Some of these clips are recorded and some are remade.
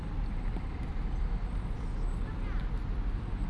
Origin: recorded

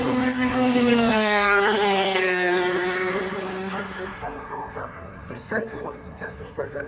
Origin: remade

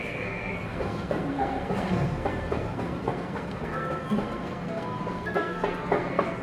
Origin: remade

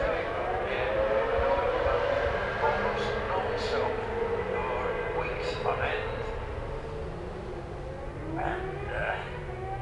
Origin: recorded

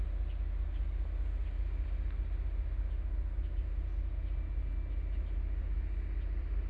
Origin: recorded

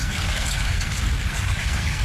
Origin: remade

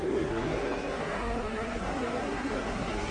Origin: remade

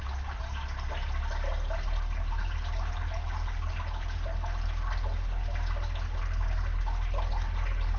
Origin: recorded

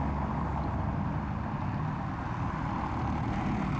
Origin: recorded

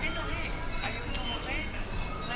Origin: recorded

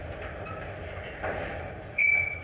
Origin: recorded